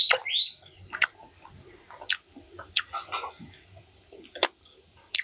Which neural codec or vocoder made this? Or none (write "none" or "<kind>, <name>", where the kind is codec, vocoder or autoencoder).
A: none